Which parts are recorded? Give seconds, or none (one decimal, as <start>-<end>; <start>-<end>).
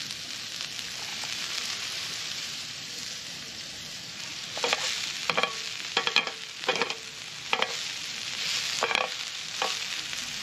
0.0-1.1; 4.3-10.4